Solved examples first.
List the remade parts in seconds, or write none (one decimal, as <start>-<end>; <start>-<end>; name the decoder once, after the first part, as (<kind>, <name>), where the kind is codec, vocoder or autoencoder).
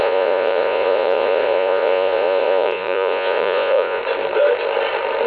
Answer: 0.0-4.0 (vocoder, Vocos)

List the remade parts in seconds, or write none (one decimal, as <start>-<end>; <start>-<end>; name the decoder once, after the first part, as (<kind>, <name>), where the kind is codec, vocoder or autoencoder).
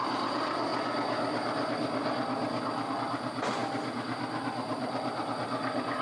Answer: 0.0-0.7 (vocoder, BigVGAN v2); 2.9-6.0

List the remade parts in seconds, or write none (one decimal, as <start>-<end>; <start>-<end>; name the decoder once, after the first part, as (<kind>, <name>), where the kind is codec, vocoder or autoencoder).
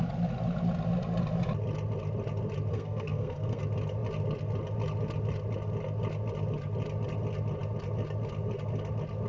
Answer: 2.7-3.6 (codec, SNAC)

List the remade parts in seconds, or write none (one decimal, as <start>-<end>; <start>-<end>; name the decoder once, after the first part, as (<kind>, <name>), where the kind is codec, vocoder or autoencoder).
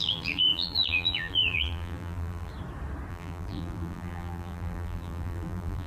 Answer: 0.0-2.5 (vocoder, BigVGAN v2); 3.1-5.9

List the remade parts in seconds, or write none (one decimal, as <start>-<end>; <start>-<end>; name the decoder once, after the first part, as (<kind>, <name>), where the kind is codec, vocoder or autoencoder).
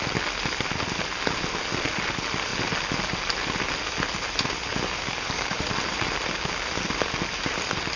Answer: 4.7-5.7 (codec, DAC)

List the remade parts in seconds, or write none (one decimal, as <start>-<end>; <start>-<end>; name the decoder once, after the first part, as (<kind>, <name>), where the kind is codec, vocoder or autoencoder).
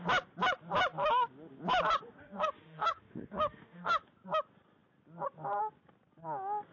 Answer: 2.2-4.0 (autoencoder, DAC-VAE)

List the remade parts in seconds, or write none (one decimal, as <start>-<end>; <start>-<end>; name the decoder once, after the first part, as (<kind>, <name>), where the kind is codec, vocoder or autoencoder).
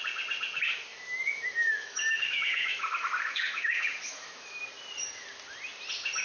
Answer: 0.9-4.6 (autoencoder, DAC-VAE)